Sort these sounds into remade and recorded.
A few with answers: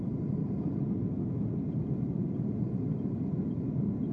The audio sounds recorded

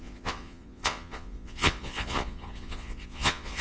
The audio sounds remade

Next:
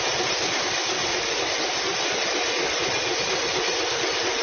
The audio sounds recorded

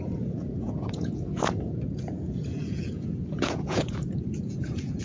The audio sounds remade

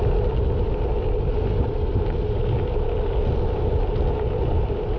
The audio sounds recorded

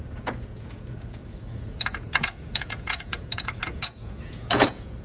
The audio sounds remade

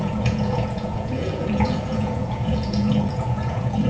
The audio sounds remade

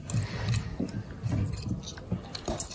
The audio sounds recorded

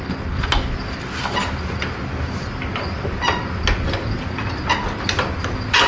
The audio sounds recorded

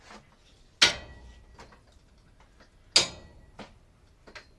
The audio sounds recorded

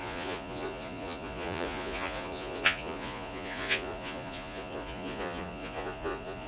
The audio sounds remade